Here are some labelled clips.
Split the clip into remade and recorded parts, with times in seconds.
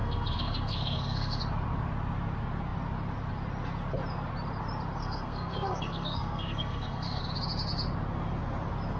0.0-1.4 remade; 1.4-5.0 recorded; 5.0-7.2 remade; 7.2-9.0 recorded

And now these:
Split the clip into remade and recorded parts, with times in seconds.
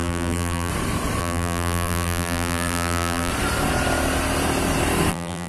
0.0-0.7 remade; 0.7-1.2 recorded; 1.2-3.3 remade; 3.3-5.1 recorded; 5.1-5.5 remade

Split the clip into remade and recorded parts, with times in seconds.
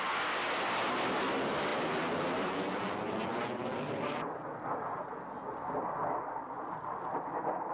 0.0-7.7 recorded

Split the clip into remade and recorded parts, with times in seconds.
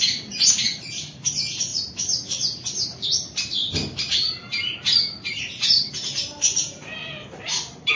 0.0-8.0 remade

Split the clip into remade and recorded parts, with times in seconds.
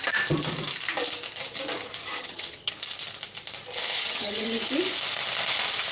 0.0-2.0 recorded; 2.0-2.7 remade; 2.7-4.0 recorded; 4.0-4.6 remade; 4.6-5.9 recorded